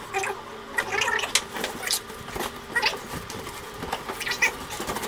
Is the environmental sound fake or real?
real